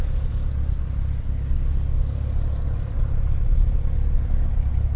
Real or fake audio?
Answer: real